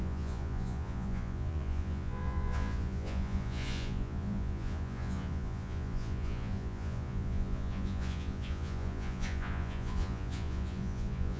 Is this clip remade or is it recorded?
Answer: remade